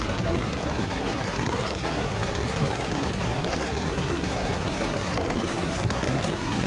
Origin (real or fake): fake